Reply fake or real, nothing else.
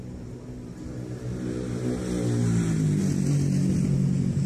real